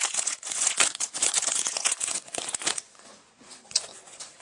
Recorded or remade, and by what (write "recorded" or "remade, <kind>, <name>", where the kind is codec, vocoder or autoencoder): remade, vocoder, Vocos